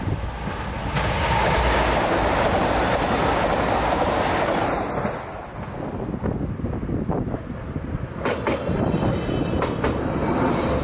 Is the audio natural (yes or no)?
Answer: yes